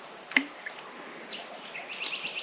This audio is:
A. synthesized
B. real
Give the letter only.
B